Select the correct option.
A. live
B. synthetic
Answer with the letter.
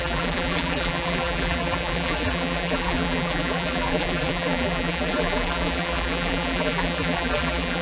B